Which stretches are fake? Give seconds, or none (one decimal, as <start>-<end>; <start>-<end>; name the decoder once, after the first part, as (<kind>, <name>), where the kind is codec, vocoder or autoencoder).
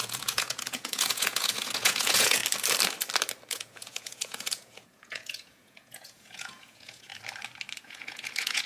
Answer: 0.0-2.4 (vocoder, Vocos); 3.5-7.1; 7.8-8.7